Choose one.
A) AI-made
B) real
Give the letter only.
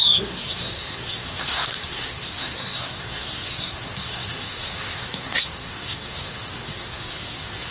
A